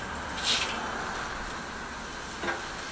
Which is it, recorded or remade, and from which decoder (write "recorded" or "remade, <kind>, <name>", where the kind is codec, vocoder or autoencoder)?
recorded